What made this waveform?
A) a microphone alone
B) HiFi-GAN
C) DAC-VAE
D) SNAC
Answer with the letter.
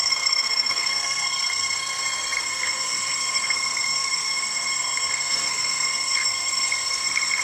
D